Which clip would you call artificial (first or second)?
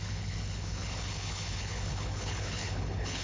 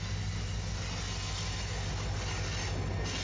first